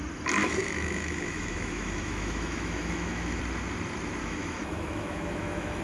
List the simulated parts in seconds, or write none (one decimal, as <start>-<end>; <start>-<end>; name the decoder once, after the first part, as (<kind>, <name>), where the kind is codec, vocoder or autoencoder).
0.4-3.4 (autoencoder, DAC-VAE); 4.2-5.8